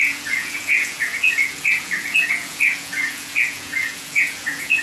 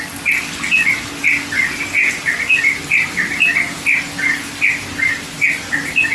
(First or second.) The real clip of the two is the second